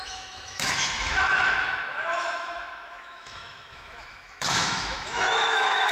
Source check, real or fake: fake